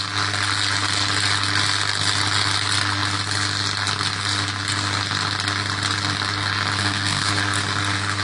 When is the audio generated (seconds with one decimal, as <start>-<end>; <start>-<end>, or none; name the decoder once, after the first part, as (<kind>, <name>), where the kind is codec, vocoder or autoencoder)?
6.8-7.3 (codec, SNAC)